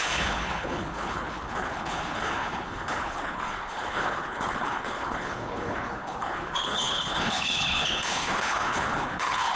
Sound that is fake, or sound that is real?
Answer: fake